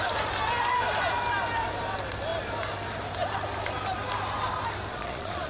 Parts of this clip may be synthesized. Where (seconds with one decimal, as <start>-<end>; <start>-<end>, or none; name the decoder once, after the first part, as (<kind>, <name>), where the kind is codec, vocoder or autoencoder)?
4.9-5.5 (vocoder, Vocos)